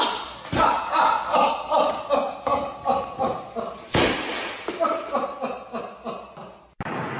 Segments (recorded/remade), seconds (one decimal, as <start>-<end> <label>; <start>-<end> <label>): 0.0-7.2 recorded